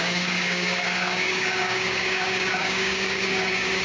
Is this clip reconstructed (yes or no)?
yes